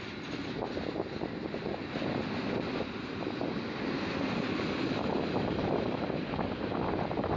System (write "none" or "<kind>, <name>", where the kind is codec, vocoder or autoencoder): none